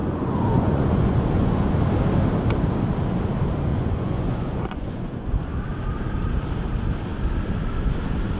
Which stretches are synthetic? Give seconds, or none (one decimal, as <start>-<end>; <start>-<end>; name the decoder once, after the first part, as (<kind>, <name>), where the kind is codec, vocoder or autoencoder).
0.0-1.7 (vocoder, Vocos); 3.7-5.5